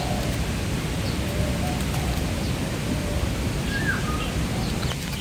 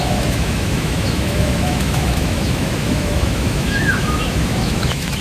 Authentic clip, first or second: first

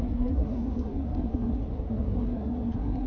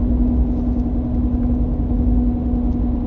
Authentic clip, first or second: second